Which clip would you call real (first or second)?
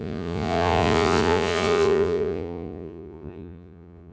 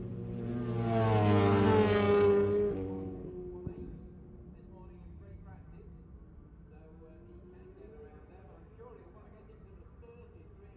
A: second